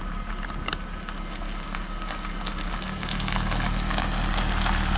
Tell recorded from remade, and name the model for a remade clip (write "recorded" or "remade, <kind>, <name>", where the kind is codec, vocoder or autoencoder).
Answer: recorded